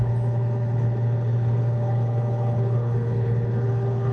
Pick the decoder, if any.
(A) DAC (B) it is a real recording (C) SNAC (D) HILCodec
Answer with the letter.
D